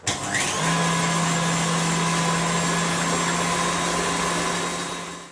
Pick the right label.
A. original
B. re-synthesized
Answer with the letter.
A